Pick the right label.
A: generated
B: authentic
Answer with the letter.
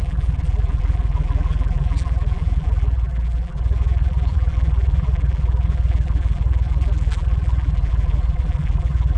A